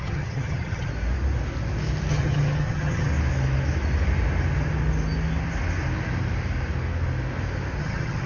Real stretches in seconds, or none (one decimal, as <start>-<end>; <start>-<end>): 0.9-2.1; 3.1-7.8